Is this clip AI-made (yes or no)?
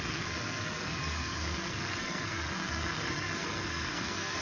yes